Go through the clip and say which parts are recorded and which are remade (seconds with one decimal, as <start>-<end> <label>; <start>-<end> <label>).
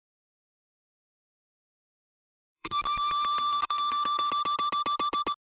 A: 0.0-1.9 recorded; 1.9-2.8 remade; 2.8-3.4 recorded; 3.4-4.3 remade; 4.3-5.5 recorded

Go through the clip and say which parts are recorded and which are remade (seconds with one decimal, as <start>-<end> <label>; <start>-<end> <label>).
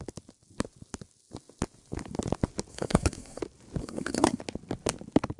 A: 0.0-2.7 recorded; 2.7-3.4 remade; 3.4-3.8 recorded; 3.8-4.4 remade; 4.4-5.4 recorded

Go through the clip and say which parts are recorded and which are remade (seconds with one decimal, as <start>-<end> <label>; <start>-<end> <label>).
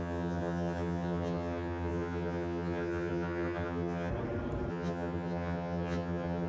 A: 0.0-4.1 remade; 4.1-4.7 recorded; 4.7-6.5 remade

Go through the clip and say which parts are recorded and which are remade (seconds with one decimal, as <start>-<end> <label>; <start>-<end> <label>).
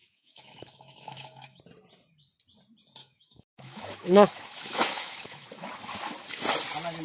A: 0.0-1.6 remade; 1.6-3.0 recorded; 3.0-5.7 remade; 5.7-7.0 recorded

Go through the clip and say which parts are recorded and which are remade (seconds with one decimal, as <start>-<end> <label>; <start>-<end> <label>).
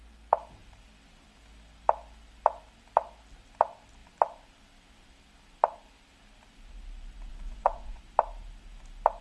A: 0.0-7.3 recorded; 7.3-8.0 remade; 8.0-9.2 recorded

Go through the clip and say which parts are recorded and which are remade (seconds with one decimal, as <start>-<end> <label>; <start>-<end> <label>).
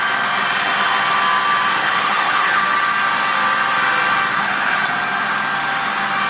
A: 0.0-1.8 recorded; 1.8-2.6 remade; 2.6-4.3 recorded; 4.3-4.9 remade; 4.9-6.3 recorded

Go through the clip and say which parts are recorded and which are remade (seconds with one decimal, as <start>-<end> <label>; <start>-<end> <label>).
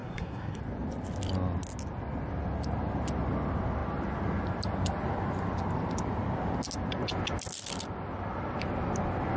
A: 0.0-0.6 remade; 0.6-9.4 recorded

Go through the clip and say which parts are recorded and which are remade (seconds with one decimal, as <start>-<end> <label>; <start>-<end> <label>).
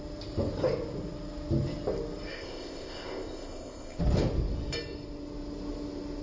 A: 0.0-2.3 recorded; 2.3-4.0 remade; 4.0-6.2 recorded